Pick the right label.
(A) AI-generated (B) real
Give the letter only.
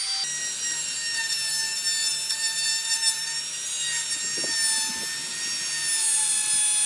B